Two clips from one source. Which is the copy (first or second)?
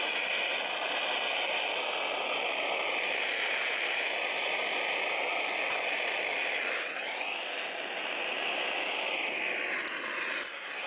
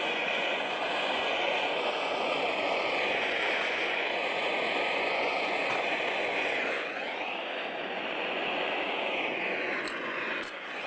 second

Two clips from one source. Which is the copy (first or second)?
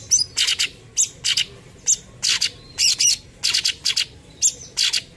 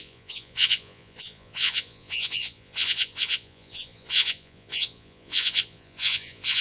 second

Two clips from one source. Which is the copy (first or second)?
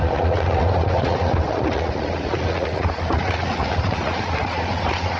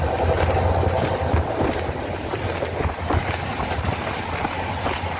first